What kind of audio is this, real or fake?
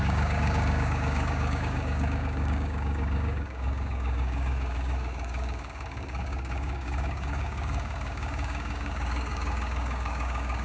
fake